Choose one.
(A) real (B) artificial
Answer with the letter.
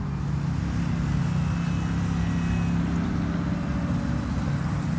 A